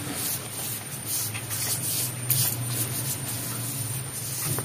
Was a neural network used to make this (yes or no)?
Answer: no